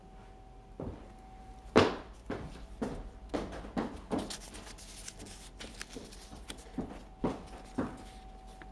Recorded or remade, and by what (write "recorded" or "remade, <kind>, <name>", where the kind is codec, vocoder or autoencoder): recorded